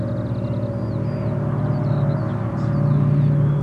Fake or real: real